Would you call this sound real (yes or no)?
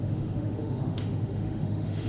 no